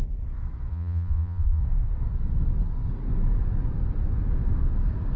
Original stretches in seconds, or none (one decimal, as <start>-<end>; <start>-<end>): 0.0-0.7; 1.6-5.2